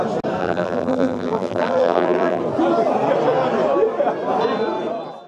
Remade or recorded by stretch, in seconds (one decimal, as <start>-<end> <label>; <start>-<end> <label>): 0.0-0.4 recorded; 0.4-2.4 remade; 2.4-5.3 recorded